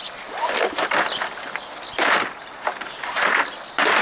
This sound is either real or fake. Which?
real